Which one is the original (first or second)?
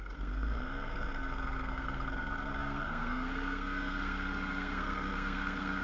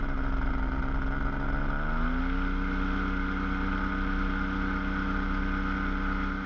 second